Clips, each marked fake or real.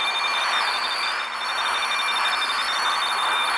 fake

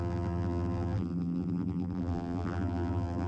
fake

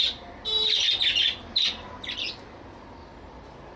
real